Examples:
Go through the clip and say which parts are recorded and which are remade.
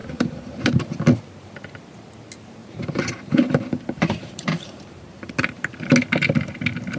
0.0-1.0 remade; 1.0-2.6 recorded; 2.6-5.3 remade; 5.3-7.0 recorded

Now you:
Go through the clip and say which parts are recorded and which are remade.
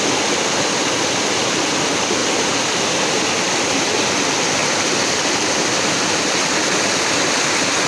0.0-2.2 recorded; 2.2-3.1 remade; 3.1-4.6 recorded; 4.6-6.4 remade; 6.4-7.9 recorded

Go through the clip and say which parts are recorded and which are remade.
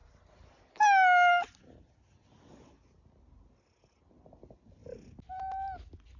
0.0-6.2 recorded